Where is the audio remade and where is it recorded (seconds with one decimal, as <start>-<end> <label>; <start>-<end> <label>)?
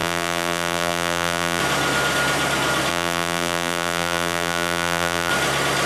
0.0-1.6 remade; 1.6-2.9 recorded; 2.9-5.3 remade; 5.3-5.9 recorded